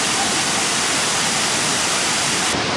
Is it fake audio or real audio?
real